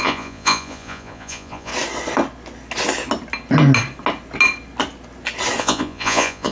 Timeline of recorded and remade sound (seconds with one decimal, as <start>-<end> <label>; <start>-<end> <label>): 0.0-1.7 remade; 1.7-5.6 recorded; 5.6-6.5 remade